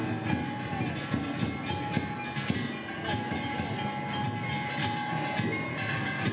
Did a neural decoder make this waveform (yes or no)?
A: no